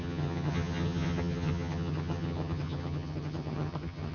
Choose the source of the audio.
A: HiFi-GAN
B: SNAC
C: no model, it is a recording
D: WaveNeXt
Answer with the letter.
A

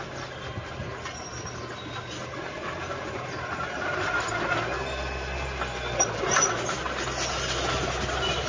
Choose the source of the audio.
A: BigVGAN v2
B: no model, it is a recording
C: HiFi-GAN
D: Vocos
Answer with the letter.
B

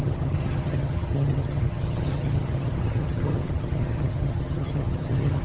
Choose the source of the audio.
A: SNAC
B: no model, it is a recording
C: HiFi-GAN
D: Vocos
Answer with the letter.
C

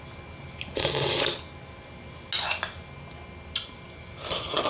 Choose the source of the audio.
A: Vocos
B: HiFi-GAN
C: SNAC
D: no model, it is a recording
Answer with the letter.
D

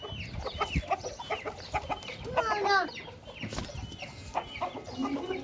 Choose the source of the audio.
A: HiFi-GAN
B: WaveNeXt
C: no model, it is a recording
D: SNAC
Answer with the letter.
C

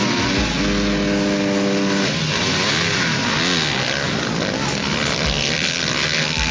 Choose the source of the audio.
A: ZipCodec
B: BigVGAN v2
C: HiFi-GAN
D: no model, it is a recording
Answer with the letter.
D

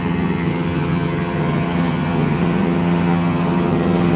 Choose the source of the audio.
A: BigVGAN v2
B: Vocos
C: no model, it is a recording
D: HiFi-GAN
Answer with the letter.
D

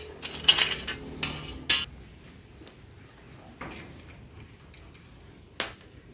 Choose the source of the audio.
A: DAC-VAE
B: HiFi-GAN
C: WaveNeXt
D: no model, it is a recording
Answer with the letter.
D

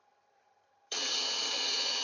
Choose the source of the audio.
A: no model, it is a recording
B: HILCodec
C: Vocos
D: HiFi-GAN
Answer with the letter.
D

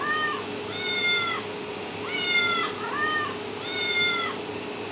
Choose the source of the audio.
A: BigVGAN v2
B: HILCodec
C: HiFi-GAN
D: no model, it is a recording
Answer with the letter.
D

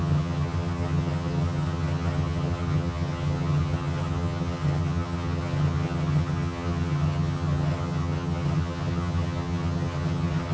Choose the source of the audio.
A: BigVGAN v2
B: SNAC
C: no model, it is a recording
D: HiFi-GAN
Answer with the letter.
D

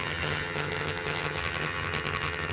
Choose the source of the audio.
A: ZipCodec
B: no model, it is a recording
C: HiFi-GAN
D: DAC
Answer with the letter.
C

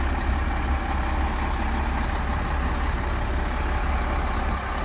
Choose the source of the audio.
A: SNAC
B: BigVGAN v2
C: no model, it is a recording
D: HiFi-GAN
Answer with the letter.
C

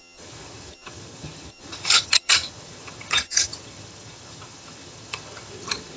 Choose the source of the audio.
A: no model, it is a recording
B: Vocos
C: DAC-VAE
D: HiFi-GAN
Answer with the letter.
D